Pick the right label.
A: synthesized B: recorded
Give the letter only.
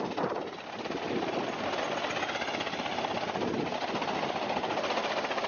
B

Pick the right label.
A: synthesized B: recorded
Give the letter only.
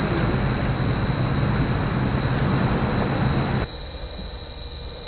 B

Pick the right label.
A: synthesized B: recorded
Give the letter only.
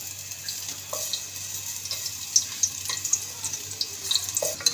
B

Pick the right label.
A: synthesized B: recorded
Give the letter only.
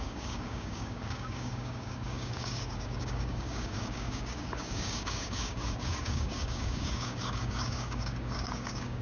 A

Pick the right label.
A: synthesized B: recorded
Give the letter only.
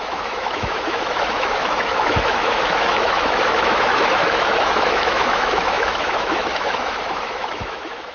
A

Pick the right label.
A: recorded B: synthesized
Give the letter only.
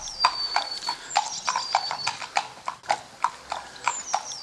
A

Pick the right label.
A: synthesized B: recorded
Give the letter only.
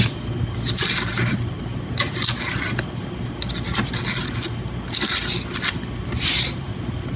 B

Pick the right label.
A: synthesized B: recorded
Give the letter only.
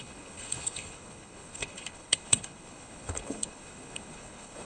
A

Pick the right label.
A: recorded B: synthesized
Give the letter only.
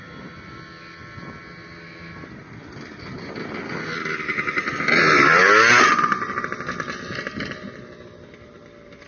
A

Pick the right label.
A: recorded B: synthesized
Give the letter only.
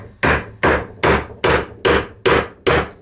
A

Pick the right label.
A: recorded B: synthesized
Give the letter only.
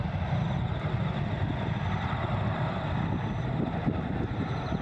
B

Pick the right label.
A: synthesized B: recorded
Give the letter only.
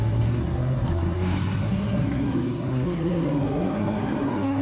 A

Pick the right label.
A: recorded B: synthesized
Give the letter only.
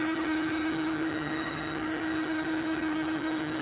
B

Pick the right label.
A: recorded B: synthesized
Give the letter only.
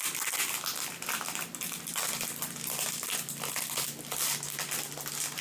A